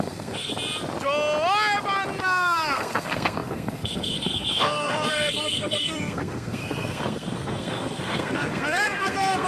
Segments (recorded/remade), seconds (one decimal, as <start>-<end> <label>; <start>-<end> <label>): 0.0-0.5 remade; 0.5-2.2 recorded; 2.2-9.5 remade